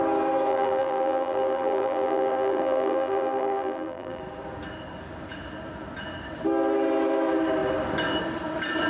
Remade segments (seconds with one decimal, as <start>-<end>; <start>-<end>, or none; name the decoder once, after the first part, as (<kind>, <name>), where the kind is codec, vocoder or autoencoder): 0.5-4.2 (vocoder, BigVGAN v2)